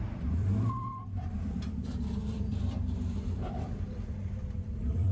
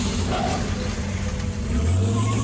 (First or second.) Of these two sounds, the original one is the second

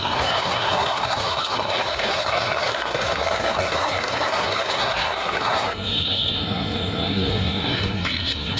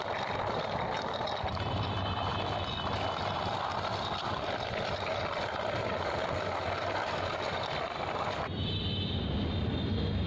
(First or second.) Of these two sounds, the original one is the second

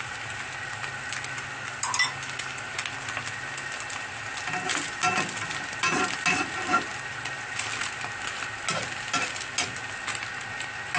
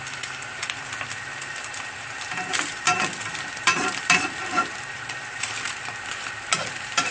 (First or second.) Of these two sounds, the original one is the first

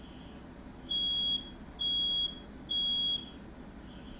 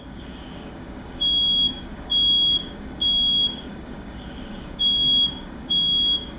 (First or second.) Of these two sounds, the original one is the first